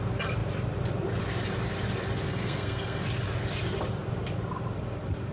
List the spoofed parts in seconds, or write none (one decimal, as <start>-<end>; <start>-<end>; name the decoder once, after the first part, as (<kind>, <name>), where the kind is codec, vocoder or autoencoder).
2.3-3.0 (codec, SNAC)